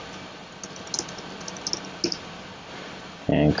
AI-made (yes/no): no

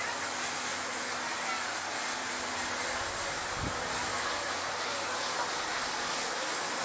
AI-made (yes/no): no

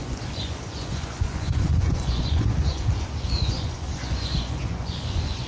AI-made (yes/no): yes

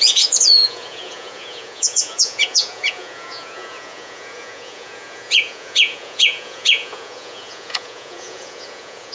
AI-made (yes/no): yes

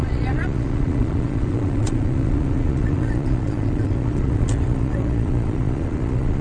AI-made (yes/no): yes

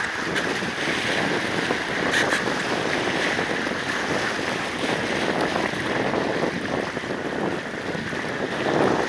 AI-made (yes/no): no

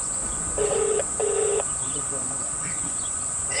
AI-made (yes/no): yes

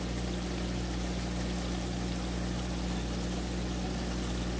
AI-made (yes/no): no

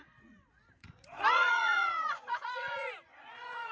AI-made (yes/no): yes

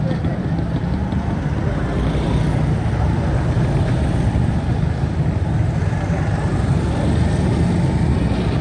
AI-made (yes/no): no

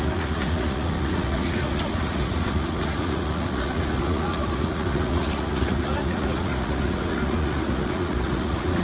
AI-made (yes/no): yes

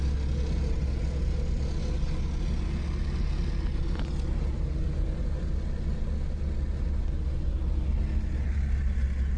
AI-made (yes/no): no